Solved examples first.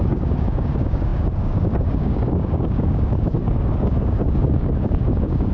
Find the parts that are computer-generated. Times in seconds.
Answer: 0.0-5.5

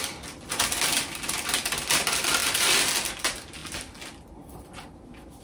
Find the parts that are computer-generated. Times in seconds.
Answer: none

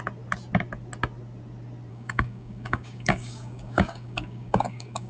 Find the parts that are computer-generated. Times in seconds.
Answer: 1.9-5.1

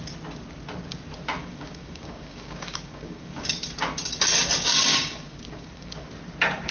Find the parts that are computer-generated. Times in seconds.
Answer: 1.4-3.6; 4.9-6.1

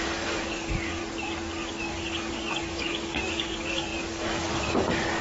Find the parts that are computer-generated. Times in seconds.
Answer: 0.0-1.0; 1.7-5.2

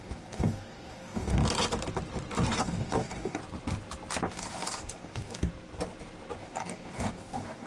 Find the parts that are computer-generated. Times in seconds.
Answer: 0.0-1.4; 2.6-3.4; 4.3-5.5; 6.4-7.7

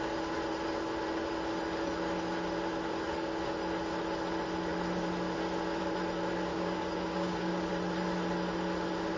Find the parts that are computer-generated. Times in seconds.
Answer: 6.5-7.7

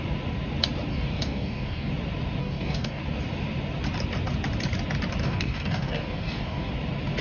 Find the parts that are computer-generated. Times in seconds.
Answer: 0.9-1.9; 2.4-3.0; 5.2-6.7